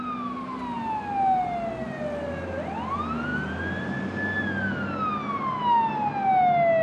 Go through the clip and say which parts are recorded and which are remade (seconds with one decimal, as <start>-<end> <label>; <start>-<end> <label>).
0.0-6.8 recorded